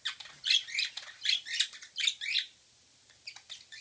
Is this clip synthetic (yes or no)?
no